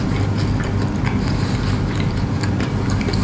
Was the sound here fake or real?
real